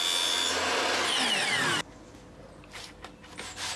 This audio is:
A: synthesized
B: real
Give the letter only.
B